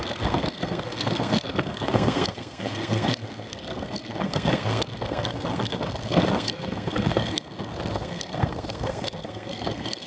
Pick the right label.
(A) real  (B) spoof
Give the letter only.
B